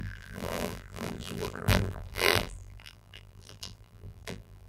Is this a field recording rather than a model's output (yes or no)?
no